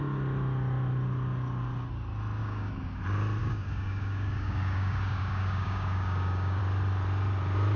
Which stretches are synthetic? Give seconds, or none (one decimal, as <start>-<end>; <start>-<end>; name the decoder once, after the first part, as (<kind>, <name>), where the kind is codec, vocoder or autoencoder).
2.4-3.0 (codec, DAC); 3.4-6.6